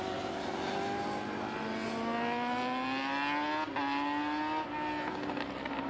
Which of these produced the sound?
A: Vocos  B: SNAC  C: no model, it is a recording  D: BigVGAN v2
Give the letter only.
C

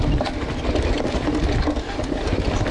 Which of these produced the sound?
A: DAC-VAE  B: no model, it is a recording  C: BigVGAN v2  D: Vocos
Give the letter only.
B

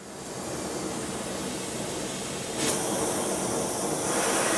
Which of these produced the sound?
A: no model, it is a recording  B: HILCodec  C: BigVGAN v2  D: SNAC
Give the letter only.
A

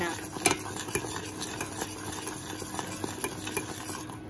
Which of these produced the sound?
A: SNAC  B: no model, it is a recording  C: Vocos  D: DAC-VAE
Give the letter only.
B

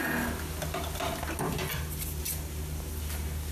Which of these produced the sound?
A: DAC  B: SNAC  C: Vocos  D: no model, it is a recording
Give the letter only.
D